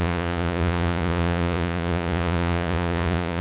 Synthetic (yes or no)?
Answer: yes